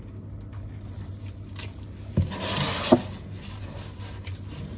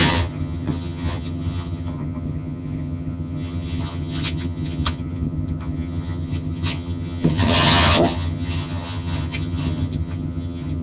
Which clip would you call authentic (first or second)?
first